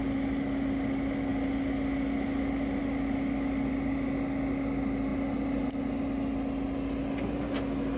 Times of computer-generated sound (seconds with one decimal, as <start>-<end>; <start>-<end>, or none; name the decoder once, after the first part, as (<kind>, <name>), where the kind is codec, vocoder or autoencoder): none